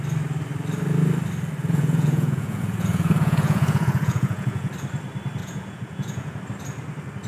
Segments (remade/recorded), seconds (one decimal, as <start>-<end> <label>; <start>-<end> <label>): 0.0-1.6 recorded; 1.6-4.7 remade; 4.7-5.4 recorded; 5.4-6.4 remade; 6.4-7.3 recorded